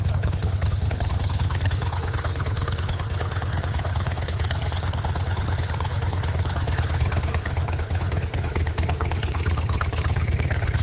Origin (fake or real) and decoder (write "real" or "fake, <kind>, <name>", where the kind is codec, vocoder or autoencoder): fake, codec, HILCodec